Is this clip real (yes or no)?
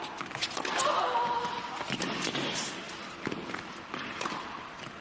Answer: yes